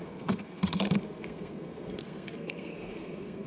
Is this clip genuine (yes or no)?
no